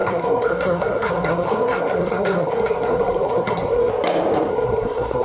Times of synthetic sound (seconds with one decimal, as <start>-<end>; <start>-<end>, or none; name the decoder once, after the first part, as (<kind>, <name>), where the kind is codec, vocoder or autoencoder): 0.0-3.9 (codec, SNAC); 4.5-5.2

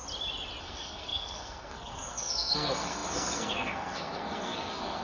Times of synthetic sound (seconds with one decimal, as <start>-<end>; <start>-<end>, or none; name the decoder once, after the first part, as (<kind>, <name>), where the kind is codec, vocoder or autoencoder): 0.6-5.0 (codec, SNAC)

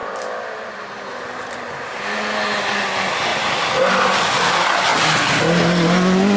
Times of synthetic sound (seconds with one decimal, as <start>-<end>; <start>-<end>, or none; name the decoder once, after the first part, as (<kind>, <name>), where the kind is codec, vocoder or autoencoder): 0.0-2.0 (vocoder, BigVGAN v2)